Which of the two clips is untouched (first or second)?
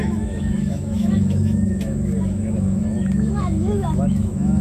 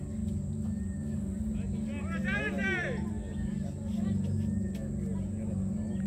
second